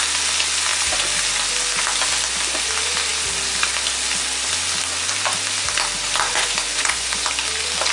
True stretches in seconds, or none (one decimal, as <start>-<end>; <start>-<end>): 0.0-6.3; 7.3-7.9